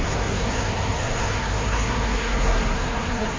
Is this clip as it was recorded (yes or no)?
no